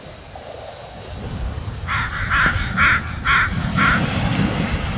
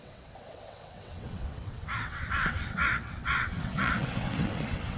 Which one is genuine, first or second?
first